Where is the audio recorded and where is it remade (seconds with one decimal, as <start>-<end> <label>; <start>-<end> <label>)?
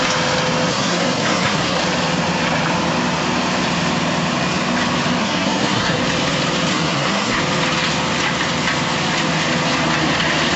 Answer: 0.0-0.7 recorded; 0.7-1.8 remade; 1.8-5.2 recorded; 5.2-6.0 remade; 6.0-6.7 recorded; 6.7-7.4 remade; 7.4-10.6 recorded